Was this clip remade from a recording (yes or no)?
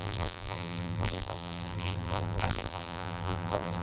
yes